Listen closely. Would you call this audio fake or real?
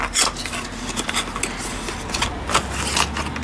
real